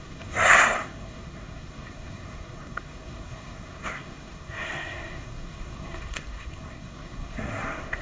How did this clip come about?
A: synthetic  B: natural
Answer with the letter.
A